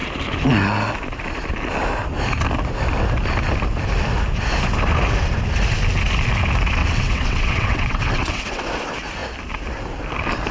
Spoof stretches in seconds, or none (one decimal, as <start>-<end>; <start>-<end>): 6.8-8.7